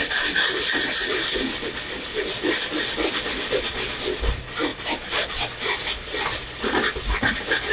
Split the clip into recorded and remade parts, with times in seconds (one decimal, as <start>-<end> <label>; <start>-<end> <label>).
0.0-7.7 recorded